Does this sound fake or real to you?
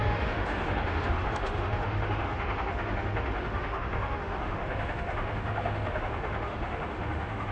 fake